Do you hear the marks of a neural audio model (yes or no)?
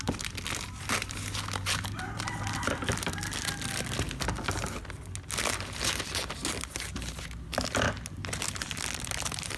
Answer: no